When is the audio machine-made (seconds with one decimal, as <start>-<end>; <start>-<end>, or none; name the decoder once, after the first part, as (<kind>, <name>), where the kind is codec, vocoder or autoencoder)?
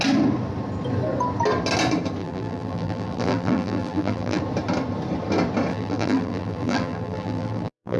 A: 2.2-4.4 (vocoder, BigVGAN v2); 5.7-8.0